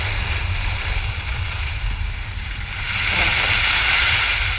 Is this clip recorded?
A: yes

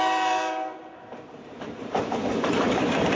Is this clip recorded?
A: no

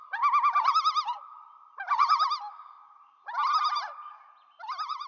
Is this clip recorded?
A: yes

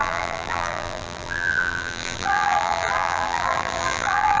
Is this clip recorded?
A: no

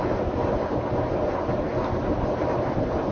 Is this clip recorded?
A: yes